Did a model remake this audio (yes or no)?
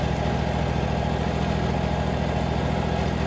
no